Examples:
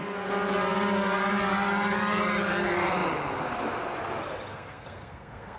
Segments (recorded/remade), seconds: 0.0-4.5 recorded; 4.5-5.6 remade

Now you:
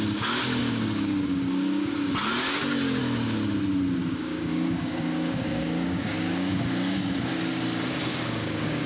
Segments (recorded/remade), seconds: 0.0-0.6 recorded; 0.6-1.9 remade; 1.9-2.5 recorded; 2.5-3.0 remade; 3.0-4.0 recorded; 4.0-7.0 remade; 7.0-8.1 recorded; 8.1-8.9 remade

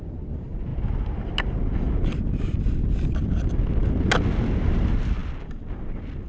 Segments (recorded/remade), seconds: 0.0-6.3 recorded

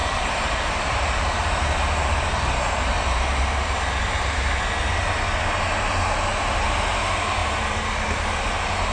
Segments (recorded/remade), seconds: 0.0-4.5 remade; 4.5-7.4 recorded; 7.4-8.0 remade; 8.0-8.9 recorded

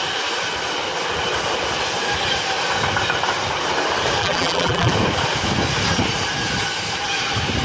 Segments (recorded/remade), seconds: 0.0-4.2 recorded; 4.2-4.9 remade; 4.9-7.6 recorded

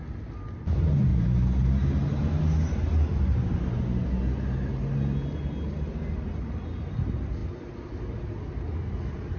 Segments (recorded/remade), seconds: 0.0-9.4 recorded